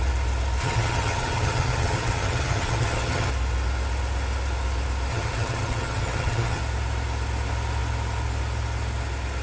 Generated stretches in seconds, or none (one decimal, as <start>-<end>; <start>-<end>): 0.6-3.3; 5.1-6.6